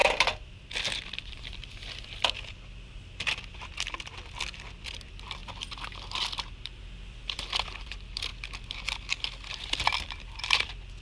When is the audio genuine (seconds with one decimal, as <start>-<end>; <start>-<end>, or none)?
5.4-6.5; 8.3-9.8